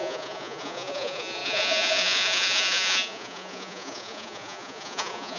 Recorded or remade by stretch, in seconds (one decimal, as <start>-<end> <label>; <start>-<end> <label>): 0.0-5.4 remade